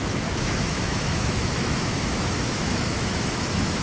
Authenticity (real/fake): fake